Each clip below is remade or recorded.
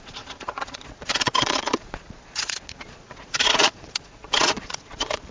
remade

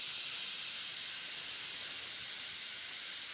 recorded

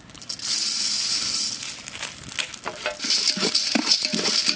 recorded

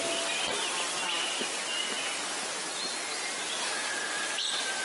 recorded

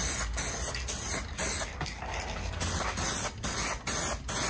recorded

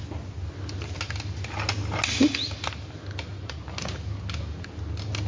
recorded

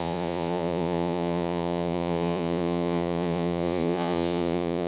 remade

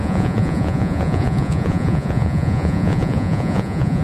remade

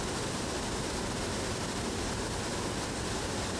recorded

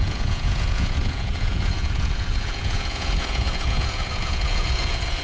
remade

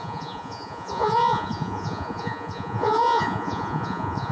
remade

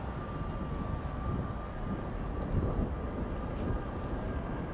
recorded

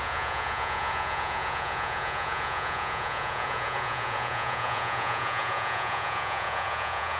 remade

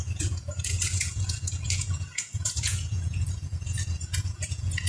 remade